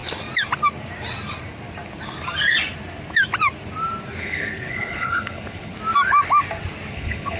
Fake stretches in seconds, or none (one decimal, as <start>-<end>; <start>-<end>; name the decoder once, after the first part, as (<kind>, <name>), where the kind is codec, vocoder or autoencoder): 4.2-5.7 (codec, HILCodec); 6.9-7.4